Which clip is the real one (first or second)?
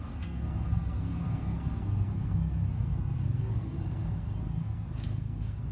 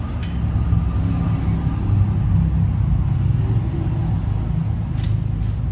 second